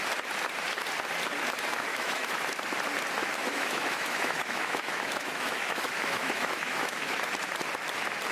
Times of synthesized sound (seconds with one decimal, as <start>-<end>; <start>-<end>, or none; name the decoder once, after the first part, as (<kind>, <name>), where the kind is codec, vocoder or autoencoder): 1.9-2.4 (autoencoder, DAC-VAE); 3.2-7.3